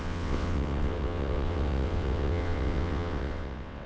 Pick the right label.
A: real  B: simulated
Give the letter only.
B